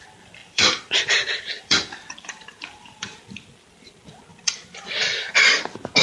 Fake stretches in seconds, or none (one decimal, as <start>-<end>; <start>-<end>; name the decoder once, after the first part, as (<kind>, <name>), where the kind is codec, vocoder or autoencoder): 0.4-3.8 (vocoder, BigVGAN v2); 4.3-4.9